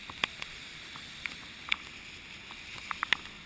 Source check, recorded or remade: recorded